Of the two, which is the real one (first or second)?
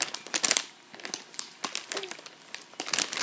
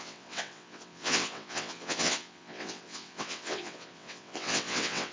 first